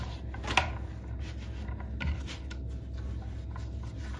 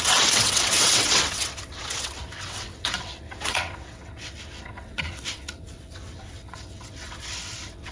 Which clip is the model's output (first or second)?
second